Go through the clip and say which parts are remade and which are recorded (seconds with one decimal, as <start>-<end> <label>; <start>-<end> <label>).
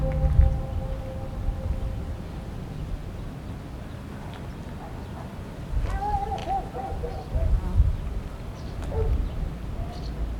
0.0-10.4 recorded